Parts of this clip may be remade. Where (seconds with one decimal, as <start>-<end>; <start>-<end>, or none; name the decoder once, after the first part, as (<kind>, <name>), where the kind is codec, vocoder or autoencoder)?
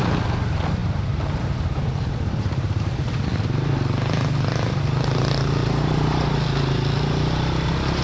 0.8-2.8 (vocoder, BigVGAN v2); 5.6-6.3